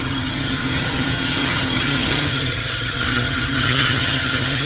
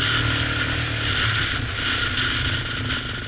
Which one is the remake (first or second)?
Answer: first